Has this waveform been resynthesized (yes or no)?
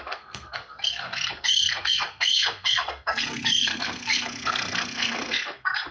yes